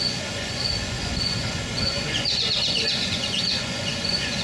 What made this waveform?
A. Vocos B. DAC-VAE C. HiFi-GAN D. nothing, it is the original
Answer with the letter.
A